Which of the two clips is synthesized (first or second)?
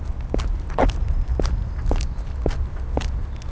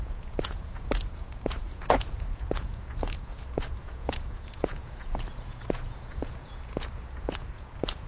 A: second